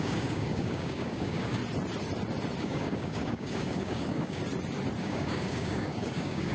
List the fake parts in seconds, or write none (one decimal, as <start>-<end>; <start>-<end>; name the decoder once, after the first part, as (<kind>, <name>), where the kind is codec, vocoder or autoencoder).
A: 0.0-1.6 (codec, DAC); 2.6-4.4; 5.0-6.5